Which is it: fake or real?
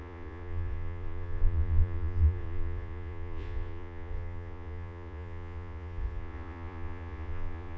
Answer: fake